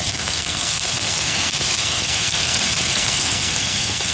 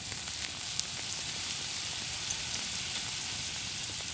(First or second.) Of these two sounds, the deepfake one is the first